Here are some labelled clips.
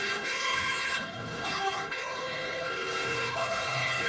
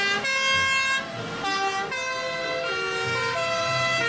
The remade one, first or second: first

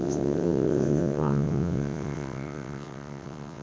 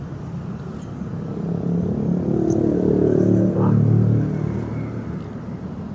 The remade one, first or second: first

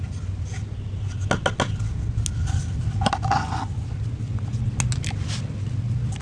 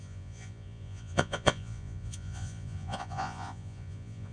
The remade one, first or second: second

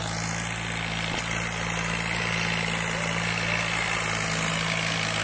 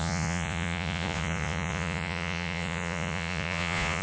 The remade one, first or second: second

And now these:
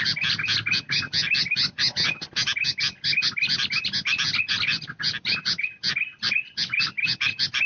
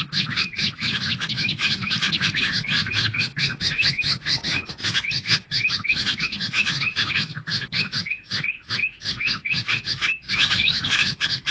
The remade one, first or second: second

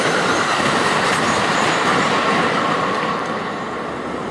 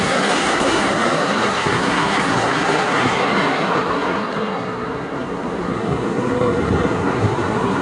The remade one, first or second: second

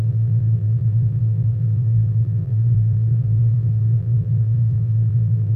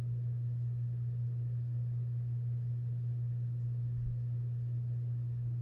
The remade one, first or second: first